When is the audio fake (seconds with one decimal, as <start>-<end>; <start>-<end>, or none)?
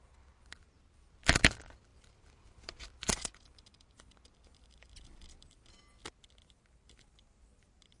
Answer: 1.9-5.7